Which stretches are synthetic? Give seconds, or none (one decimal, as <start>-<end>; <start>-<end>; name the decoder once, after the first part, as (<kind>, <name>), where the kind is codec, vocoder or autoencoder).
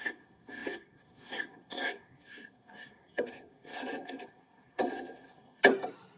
0.0-5.6 (codec, SNAC)